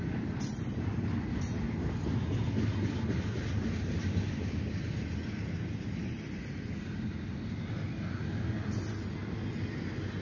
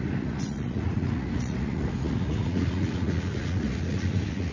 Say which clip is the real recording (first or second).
first